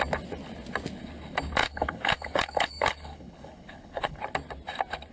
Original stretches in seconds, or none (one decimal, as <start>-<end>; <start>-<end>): 0.0-1.6; 4.2-5.1